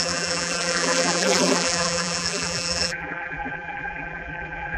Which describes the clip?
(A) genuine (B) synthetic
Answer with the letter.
B